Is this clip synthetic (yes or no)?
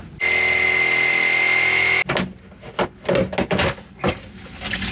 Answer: no